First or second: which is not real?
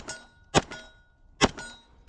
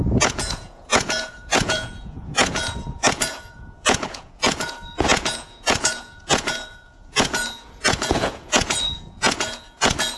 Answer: second